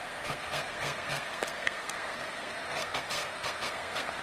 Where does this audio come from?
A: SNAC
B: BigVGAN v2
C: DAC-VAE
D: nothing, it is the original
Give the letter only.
A